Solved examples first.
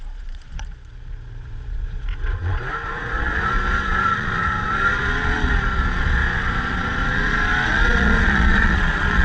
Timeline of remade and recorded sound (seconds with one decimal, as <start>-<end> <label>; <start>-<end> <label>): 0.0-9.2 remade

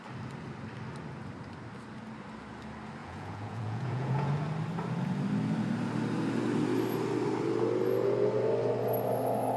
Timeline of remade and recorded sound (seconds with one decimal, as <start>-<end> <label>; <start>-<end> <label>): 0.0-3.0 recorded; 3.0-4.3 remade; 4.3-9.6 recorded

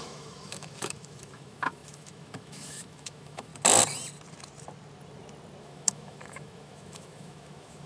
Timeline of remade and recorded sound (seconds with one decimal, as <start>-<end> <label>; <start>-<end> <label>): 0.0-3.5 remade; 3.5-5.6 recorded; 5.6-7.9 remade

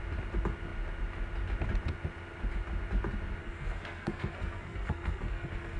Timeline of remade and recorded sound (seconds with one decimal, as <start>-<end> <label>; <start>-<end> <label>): 0.0-3.4 recorded; 3.4-5.8 remade